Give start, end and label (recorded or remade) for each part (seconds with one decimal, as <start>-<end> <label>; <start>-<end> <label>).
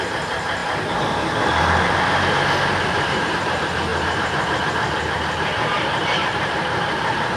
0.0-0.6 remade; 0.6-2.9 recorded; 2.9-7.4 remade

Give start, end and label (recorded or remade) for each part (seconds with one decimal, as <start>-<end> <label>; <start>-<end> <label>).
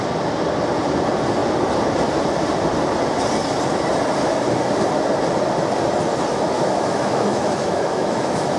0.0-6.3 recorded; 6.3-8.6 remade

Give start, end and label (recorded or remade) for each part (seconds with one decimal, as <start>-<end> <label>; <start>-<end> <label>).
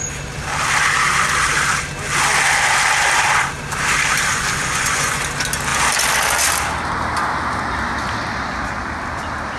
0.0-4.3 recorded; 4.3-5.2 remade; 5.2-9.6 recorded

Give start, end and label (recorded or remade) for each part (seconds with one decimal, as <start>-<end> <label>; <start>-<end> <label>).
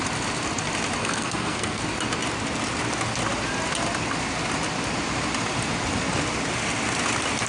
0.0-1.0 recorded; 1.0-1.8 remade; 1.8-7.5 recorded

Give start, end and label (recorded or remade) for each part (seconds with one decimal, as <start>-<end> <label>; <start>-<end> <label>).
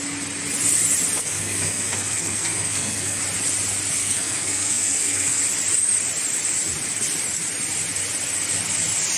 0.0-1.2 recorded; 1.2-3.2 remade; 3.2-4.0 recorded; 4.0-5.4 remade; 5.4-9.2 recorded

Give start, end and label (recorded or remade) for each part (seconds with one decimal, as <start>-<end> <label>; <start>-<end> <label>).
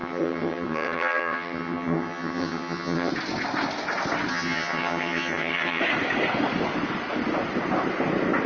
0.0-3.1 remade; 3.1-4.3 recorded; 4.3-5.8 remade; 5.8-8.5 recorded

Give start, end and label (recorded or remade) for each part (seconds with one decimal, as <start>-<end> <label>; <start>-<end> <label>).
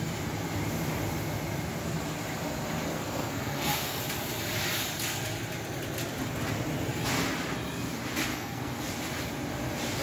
0.0-2.9 recorded; 2.9-4.0 remade; 4.0-8.3 recorded; 8.3-8.9 remade; 8.9-10.0 recorded